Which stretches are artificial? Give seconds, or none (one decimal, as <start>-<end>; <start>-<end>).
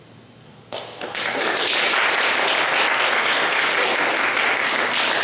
0.4-1.4; 2.9-3.6